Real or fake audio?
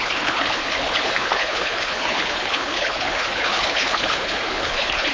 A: fake